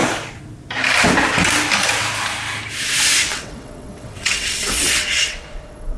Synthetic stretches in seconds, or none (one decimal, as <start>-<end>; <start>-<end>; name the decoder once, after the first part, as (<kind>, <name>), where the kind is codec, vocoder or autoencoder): 3.3-6.0 (vocoder, WaveNeXt)